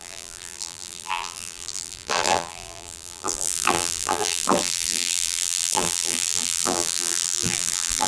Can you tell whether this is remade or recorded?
remade